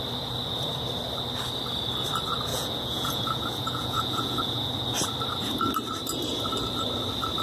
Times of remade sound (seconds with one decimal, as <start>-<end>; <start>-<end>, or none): 2.5-4.7